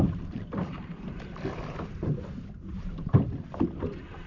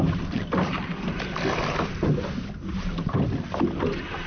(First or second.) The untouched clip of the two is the second